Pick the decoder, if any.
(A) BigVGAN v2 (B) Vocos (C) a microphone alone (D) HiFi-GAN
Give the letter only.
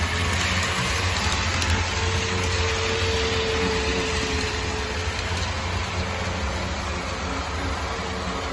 C